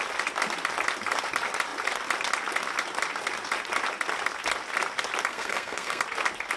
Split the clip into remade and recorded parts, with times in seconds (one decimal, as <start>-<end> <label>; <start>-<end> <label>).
0.0-5.3 recorded; 5.3-6.0 remade; 6.0-6.6 recorded